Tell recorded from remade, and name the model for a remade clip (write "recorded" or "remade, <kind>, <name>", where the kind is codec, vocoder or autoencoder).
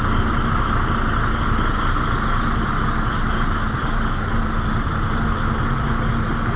recorded